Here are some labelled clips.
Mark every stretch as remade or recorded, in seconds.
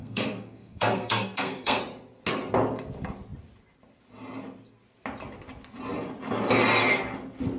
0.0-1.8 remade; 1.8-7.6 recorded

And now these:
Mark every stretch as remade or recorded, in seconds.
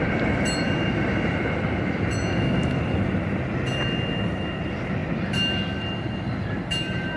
0.0-7.2 recorded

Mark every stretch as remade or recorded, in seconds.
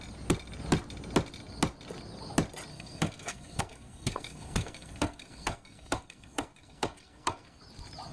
0.0-2.7 recorded; 2.7-7.6 remade; 7.6-8.1 recorded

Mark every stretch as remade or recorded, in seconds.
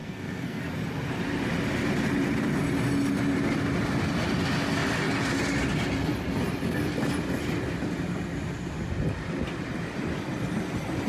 0.0-0.6 remade; 0.6-11.1 recorded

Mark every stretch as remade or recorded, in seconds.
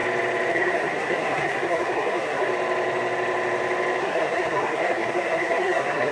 0.0-0.5 recorded; 0.5-2.5 remade; 2.5-4.0 recorded; 4.0-6.1 remade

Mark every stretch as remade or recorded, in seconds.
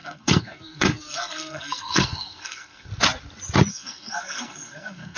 0.0-2.9 remade; 2.9-3.7 recorded; 3.7-5.2 remade